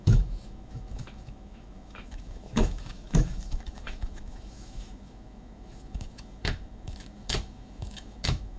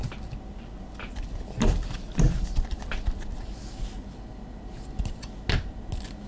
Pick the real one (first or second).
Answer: second